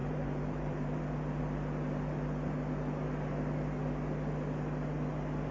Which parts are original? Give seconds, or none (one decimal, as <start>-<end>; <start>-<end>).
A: 1.0-5.5